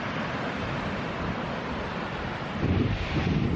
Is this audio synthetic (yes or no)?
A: no